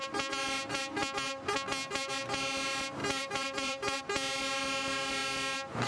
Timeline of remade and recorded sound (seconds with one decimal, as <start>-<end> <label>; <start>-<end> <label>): 0.0-3.0 recorded; 3.0-4.0 remade; 4.0-5.9 recorded